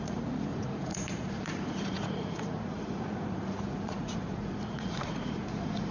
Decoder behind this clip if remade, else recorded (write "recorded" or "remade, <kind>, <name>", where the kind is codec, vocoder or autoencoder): remade, vocoder, Vocos